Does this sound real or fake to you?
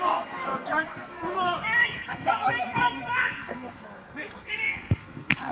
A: fake